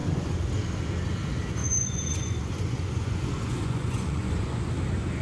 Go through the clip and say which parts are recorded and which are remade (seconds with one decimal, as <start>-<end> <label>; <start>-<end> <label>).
0.0-0.5 remade; 0.5-1.6 recorded; 1.6-4.7 remade; 4.7-5.2 recorded